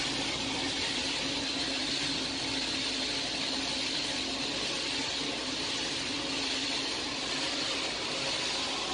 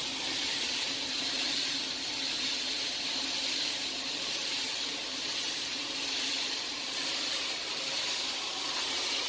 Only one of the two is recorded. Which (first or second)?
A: first